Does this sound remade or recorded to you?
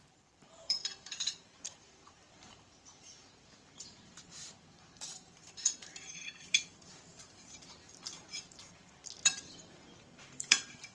remade